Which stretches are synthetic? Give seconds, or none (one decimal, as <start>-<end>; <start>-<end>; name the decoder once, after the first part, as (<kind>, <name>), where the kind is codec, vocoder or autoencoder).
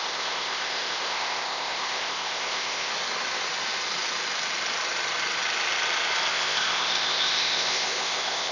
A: 0.0-2.9 (codec, ZipCodec); 6.3-8.5